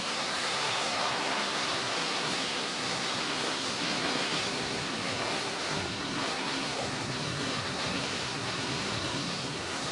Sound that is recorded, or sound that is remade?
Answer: remade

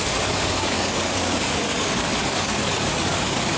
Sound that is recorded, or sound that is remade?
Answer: remade